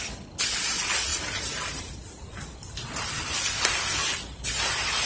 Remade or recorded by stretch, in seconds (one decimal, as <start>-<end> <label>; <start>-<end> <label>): 0.0-5.1 recorded